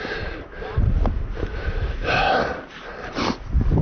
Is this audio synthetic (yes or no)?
no